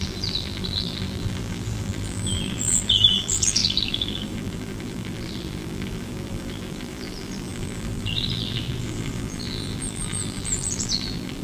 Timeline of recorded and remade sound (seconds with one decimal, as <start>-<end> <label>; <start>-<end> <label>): 0.0-11.4 remade